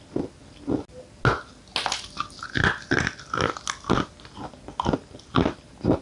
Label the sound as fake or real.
real